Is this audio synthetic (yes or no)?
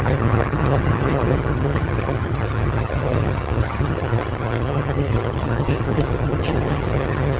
yes